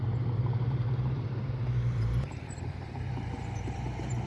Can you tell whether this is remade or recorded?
remade